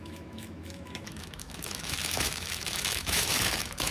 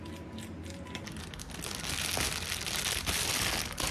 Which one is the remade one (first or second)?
first